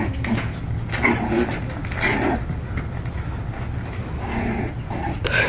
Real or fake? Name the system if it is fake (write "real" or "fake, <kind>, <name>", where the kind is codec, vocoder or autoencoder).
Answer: real